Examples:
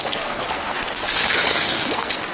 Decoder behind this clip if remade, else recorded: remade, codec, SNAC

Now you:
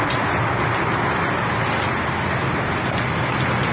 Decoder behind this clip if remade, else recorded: recorded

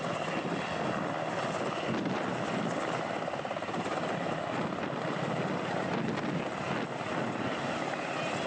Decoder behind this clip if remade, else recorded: recorded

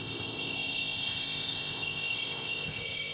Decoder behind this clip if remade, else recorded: remade, codec, ZipCodec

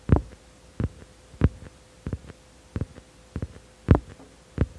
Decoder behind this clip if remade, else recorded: recorded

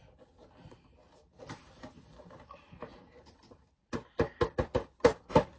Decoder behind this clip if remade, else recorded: recorded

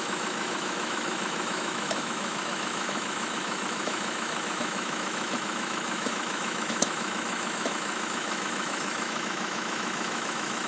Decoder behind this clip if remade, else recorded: remade, autoencoder, DAC-VAE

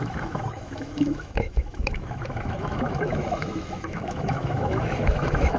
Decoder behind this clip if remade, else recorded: remade, autoencoder, DAC-VAE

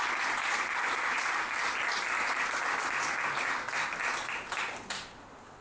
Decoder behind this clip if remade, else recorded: recorded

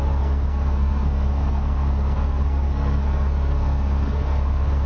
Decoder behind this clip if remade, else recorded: remade, codec, SNAC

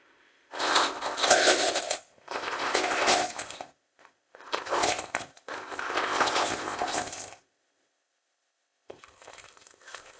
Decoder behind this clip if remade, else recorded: remade, codec, ZipCodec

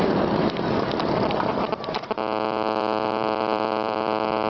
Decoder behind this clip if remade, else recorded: remade, vocoder, BigVGAN v2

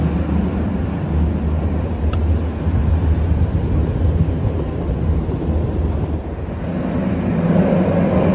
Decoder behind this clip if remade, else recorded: recorded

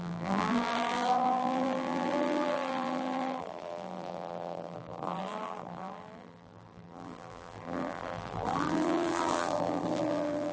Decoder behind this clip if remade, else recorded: remade, vocoder, BigVGAN v2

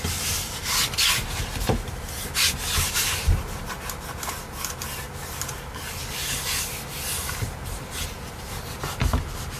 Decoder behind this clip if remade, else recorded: recorded